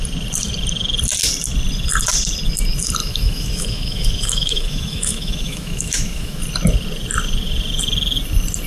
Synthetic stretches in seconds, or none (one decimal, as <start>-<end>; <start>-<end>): 3.0-6.4